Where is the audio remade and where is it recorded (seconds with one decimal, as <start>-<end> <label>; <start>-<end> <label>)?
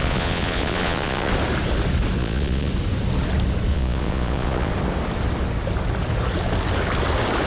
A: 0.0-1.3 remade; 1.3-2.2 recorded; 2.2-2.7 remade; 2.7-3.7 recorded; 3.7-4.7 remade; 4.7-7.5 recorded